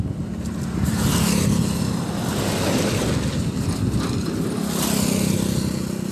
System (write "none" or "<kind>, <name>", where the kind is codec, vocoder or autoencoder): none